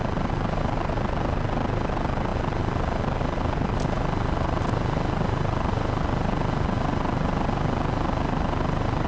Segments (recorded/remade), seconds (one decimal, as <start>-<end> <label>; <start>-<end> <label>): 0.0-9.1 recorded